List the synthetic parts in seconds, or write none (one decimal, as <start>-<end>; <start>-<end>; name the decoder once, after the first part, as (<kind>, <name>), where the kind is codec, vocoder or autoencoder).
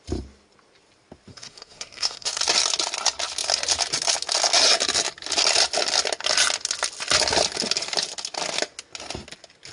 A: 1.3-2.4 (codec, SNAC)